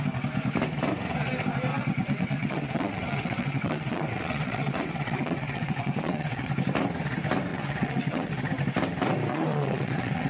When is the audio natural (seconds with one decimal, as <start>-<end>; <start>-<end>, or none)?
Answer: 0.0-1.7; 6.5-7.5; 8.3-9.3